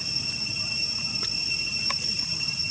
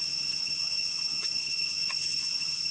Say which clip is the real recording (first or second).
first